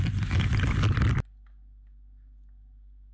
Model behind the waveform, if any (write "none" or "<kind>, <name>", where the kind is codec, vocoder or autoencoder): none